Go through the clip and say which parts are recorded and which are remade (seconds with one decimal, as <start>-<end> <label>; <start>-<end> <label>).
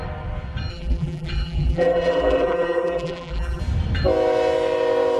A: 0.0-0.7 recorded; 0.7-3.6 remade; 3.6-5.2 recorded